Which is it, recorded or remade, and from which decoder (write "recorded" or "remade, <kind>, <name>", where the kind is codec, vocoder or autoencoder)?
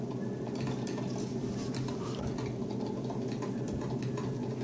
recorded